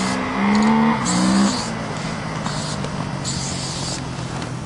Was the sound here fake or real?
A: real